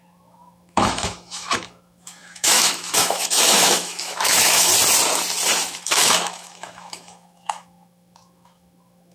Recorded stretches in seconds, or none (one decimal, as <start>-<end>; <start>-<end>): 4.7-5.7